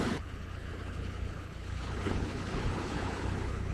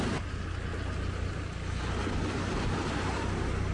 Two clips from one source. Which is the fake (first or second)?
first